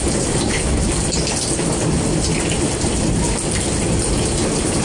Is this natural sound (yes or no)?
yes